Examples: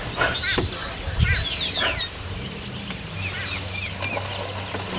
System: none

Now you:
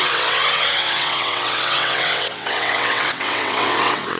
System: vocoder, WaveNeXt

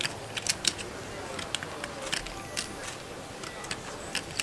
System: none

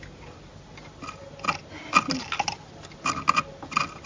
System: none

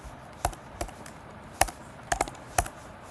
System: none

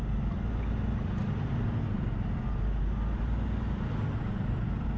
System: none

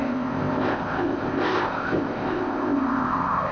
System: codec, ZipCodec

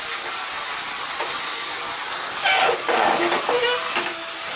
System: none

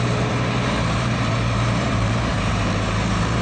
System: vocoder, BigVGAN v2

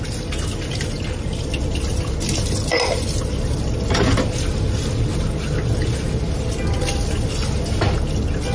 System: none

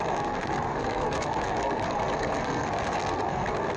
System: codec, SNAC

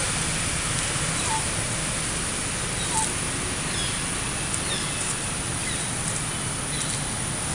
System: none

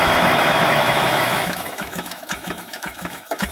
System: autoencoder, DAC-VAE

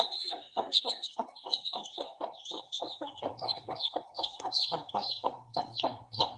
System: codec, SNAC